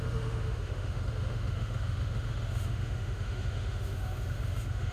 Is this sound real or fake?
fake